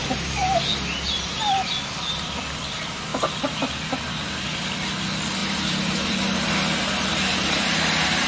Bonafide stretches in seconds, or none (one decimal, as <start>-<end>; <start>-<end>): 0.6-5.4; 6.5-7.3; 7.9-8.3